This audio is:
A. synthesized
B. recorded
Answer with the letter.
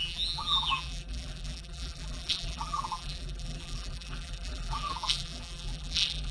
A